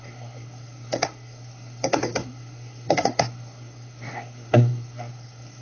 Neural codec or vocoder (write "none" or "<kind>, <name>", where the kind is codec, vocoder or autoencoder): codec, SNAC